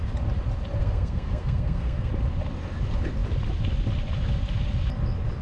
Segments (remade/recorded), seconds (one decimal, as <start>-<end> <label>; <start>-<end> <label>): 0.0-0.8 recorded; 0.8-2.1 remade; 2.1-5.4 recorded